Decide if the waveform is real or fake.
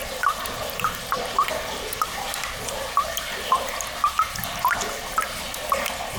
real